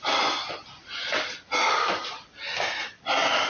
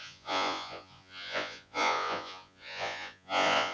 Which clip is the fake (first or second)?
second